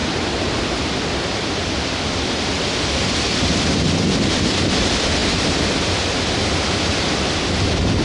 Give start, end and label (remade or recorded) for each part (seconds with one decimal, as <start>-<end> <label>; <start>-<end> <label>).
0.0-3.5 remade; 3.5-8.0 recorded